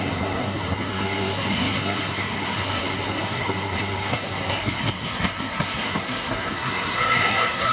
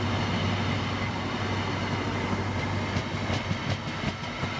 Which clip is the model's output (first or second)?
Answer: first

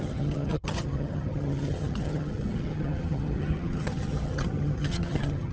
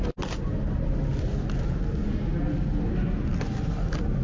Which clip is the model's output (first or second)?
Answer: first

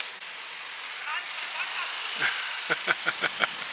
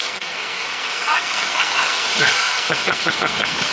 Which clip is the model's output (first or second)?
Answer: second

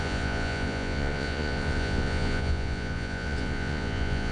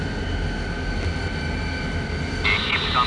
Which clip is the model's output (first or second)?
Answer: first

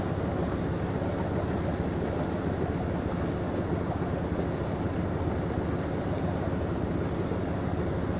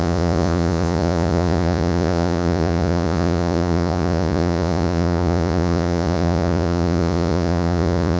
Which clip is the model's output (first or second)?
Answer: second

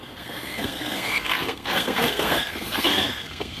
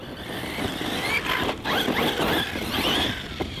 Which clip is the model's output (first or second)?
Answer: first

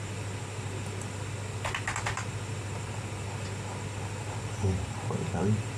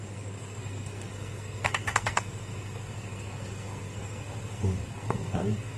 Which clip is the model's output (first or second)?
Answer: second